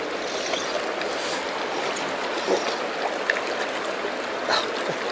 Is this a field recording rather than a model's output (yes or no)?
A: yes